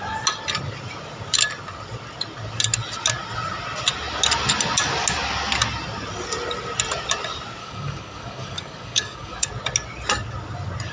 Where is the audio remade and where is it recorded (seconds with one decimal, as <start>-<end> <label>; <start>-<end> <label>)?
0.0-7.6 recorded; 7.6-9.5 remade; 9.5-10.9 recorded